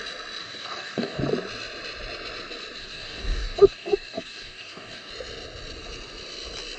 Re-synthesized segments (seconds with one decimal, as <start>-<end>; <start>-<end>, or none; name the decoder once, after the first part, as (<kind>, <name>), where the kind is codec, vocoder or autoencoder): 0.4-1.2 (codec, DAC); 2.8-5.1